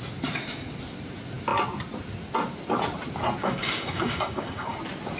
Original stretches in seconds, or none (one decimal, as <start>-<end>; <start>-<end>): 0.0-3.4; 4.8-5.2